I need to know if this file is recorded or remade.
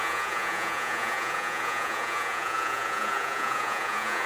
remade